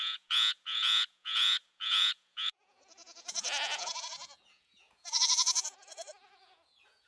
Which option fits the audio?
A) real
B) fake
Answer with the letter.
B